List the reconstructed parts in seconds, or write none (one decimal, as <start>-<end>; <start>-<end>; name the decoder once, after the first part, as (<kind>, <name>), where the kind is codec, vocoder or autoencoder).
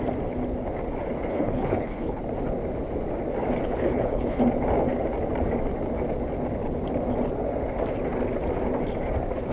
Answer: 1.3-2.2 (codec, HILCodec); 3.6-4.4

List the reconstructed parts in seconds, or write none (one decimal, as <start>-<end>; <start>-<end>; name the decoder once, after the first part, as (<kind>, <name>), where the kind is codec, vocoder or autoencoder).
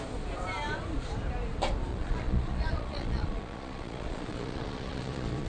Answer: 1.9-5.5 (vocoder, Vocos)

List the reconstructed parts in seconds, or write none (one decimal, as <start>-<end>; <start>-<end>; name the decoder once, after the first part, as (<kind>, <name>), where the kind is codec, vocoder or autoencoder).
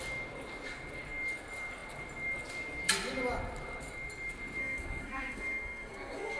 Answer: 4.6-6.4 (codec, SNAC)